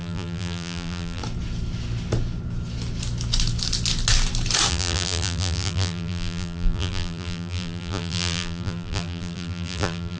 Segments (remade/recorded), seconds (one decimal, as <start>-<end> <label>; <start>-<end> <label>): 0.0-1.2 remade; 1.2-4.7 recorded; 4.7-10.2 remade